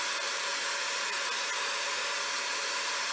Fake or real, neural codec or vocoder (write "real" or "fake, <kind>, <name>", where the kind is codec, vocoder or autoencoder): real